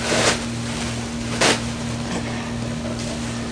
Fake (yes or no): no